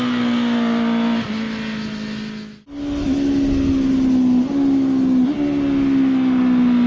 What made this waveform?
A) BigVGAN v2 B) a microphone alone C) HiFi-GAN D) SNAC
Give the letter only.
B